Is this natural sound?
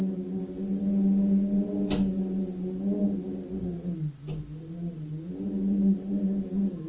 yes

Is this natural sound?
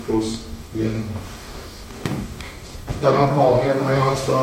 no